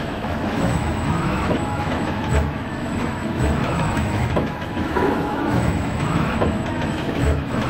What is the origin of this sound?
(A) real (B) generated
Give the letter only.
B